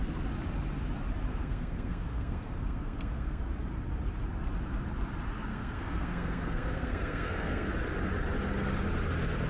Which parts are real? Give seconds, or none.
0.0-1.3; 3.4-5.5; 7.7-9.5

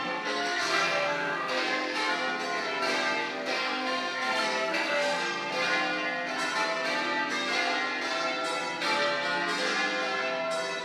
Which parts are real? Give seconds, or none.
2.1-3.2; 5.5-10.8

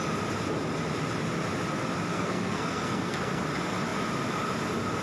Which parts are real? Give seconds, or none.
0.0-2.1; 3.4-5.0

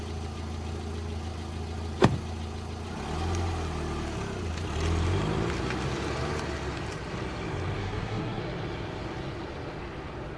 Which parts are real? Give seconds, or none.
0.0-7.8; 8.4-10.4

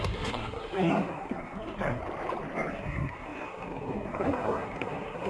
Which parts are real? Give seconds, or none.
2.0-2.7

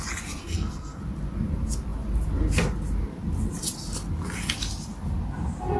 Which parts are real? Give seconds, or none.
0.0-0.4; 1.0-5.8

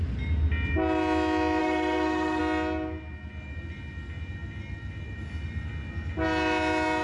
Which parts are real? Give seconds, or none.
0.0-1.6; 2.4-7.0

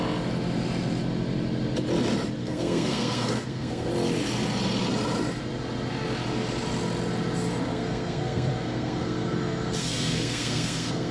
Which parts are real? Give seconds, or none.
0.0-2.4; 3.9-7.7